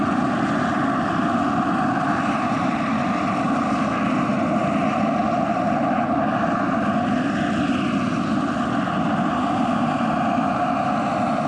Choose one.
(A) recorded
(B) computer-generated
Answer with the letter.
A